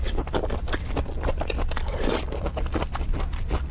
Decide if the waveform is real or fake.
real